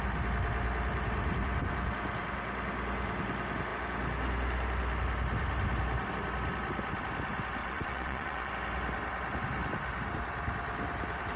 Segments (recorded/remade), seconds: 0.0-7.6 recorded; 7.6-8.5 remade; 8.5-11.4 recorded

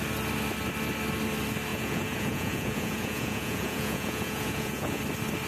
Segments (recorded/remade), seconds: 0.0-1.7 recorded; 1.7-5.0 remade; 5.0-5.5 recorded